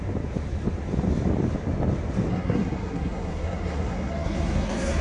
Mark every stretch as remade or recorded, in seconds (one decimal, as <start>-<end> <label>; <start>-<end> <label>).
0.0-2.3 recorded; 2.3-5.0 remade